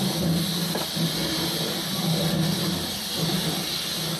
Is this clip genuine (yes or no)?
yes